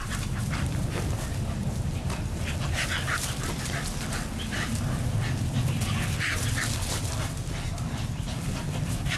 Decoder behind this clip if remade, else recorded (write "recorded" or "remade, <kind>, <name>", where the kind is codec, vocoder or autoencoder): remade, vocoder, BigVGAN v2